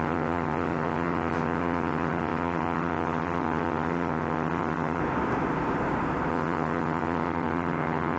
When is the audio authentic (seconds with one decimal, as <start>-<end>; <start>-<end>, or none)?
5.0-6.3

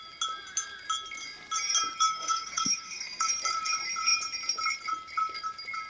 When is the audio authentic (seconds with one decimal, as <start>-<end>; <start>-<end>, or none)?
0.0-2.1; 3.3-5.9